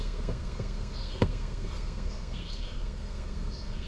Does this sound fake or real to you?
fake